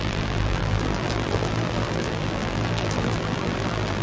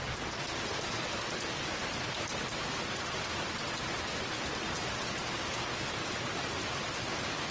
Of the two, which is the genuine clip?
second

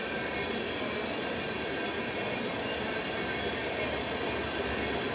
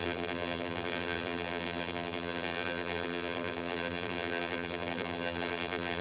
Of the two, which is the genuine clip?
first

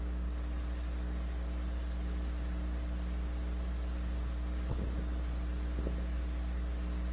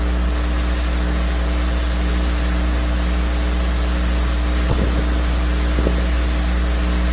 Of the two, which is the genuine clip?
first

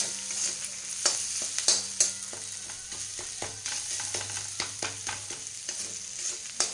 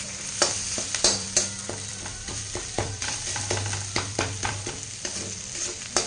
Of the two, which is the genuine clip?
first